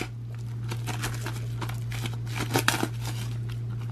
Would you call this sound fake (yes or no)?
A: no